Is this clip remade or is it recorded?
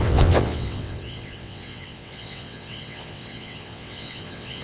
remade